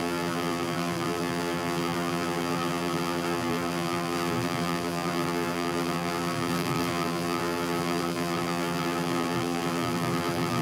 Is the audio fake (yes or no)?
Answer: yes